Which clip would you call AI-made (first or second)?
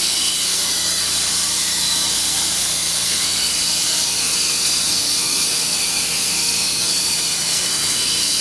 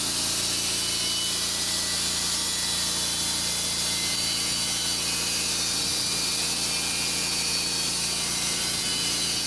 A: first